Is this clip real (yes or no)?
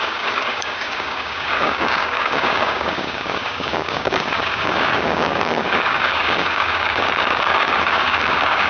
no